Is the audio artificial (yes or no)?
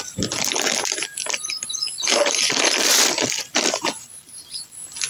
yes